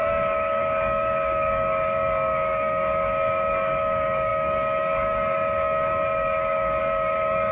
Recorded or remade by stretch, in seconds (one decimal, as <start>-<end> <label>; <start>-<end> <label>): 0.0-7.5 remade